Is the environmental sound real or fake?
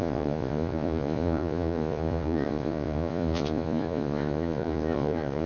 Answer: fake